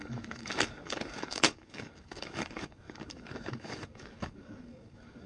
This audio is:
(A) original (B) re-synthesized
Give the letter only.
B